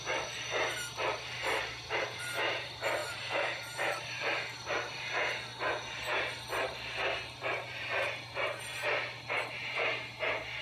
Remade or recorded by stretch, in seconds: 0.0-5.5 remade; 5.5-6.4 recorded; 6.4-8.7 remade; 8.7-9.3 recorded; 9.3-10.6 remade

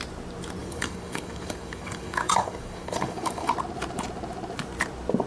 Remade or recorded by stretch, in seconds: 0.0-0.6 recorded; 0.6-3.5 remade; 3.5-5.3 recorded

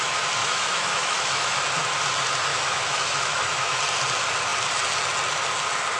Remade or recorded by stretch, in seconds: 0.0-0.4 recorded; 0.4-1.6 remade; 1.6-2.5 recorded; 2.5-3.8 remade; 3.8-6.0 recorded

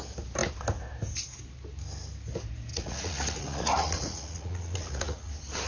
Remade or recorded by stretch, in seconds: 0.0-2.7 recorded; 2.7-5.3 remade; 5.3-5.7 recorded

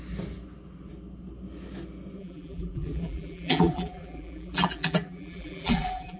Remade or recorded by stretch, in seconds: 0.0-2.2 recorded; 2.2-6.2 remade

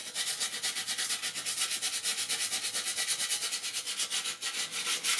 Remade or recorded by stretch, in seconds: 0.0-5.2 recorded

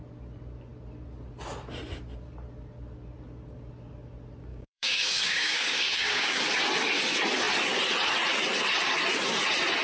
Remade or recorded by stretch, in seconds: 0.0-4.5 recorded; 4.5-6.4 remade; 6.4-9.8 recorded

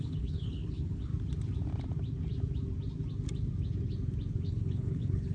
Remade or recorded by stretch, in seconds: 0.0-1.1 remade; 1.1-4.3 recorded; 4.3-5.3 remade